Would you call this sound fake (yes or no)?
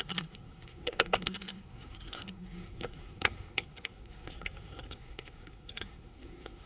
yes